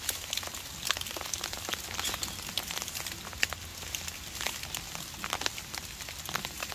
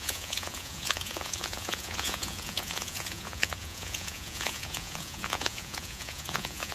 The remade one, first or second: second